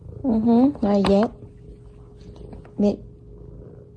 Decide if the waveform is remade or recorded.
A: recorded